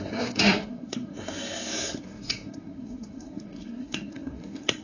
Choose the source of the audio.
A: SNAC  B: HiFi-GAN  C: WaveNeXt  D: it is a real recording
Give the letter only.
A